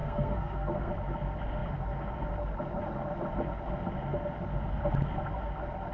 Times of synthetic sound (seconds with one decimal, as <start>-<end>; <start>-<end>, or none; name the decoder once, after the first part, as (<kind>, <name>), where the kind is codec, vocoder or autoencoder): 0.0-0.9 (codec, SNAC)